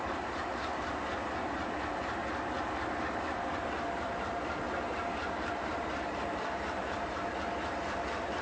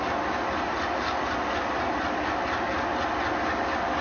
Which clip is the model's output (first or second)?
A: first